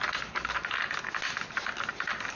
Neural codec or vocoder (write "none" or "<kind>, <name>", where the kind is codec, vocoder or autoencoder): none